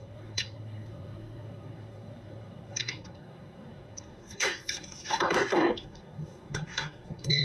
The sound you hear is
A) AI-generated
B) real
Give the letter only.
A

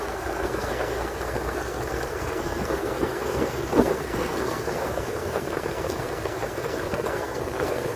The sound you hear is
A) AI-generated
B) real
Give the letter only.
A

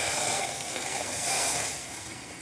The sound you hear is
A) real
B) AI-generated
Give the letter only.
B